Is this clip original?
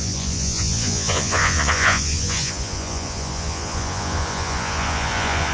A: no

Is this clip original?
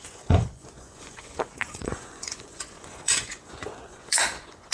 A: no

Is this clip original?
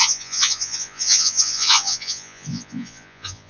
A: no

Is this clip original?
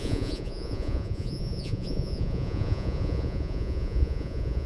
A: no